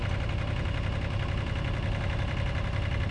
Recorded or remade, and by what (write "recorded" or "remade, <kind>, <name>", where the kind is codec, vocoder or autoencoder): recorded